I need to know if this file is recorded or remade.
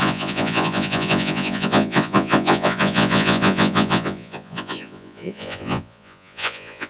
remade